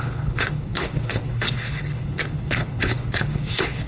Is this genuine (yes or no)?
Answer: no